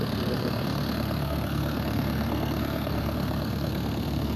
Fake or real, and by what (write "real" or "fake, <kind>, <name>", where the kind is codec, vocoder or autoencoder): fake, codec, SNAC